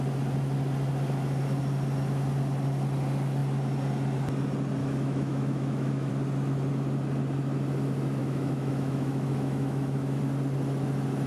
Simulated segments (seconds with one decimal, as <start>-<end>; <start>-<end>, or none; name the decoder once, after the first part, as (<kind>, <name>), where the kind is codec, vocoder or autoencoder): 4.8-6.1 (autoencoder, DAC-VAE); 8.2-10.2